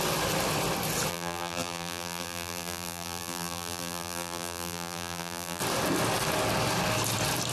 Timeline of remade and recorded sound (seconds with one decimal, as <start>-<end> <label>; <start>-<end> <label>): 0.0-1.1 recorded; 1.1-5.6 remade; 5.6-7.5 recorded